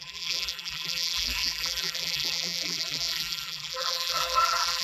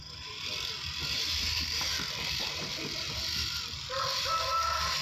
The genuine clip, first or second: second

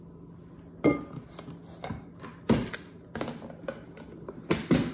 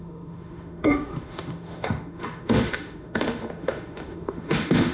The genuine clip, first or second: first